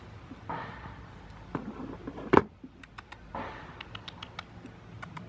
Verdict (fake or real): real